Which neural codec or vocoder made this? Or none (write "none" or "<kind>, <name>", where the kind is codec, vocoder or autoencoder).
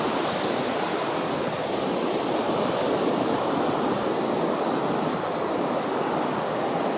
none